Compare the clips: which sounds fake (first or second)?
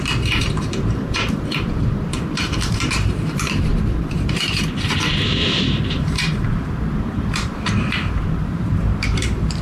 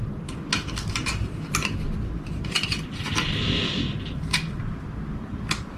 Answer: first